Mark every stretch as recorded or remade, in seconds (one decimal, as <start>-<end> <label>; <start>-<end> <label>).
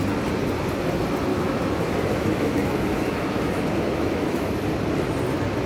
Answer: 0.0-1.3 recorded; 1.3-4.5 remade; 4.5-5.7 recorded